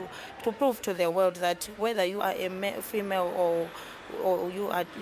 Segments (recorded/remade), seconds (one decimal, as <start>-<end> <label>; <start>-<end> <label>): 0.0-0.4 recorded; 0.4-2.2 remade; 2.2-5.0 recorded